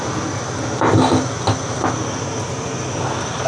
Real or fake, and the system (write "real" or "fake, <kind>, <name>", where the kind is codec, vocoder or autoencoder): real